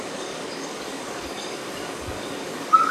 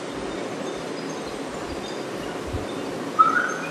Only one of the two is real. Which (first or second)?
second